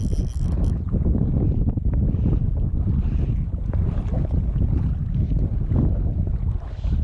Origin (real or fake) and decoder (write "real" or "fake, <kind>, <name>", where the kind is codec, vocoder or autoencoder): real